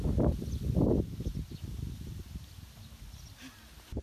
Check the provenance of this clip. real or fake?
real